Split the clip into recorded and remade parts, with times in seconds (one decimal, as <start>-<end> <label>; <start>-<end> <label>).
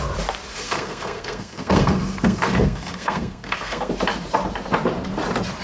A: 0.0-0.5 recorded; 0.5-3.9 remade; 3.9-5.6 recorded